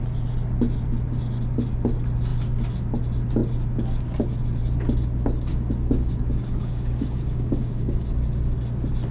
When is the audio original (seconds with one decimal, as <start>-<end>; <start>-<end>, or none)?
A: 0.0-5.5; 8.1-9.1

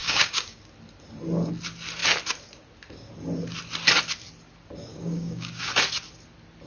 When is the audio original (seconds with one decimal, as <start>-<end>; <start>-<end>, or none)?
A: 0.6-4.9; 5.7-6.7

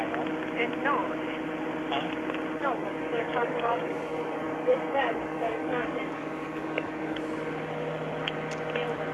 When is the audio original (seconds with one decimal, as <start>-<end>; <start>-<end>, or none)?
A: 0.0-2.8; 7.2-9.1